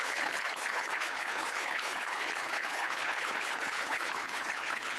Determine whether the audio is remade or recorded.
remade